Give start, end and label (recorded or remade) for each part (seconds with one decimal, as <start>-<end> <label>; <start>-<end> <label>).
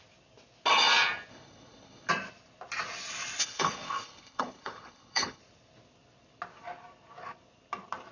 0.0-1.3 recorded; 1.3-2.1 remade; 2.1-3.4 recorded; 3.4-5.4 remade; 5.4-8.1 recorded